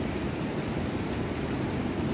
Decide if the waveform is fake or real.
real